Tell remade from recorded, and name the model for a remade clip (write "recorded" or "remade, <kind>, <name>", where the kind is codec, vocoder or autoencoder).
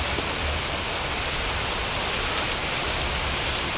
recorded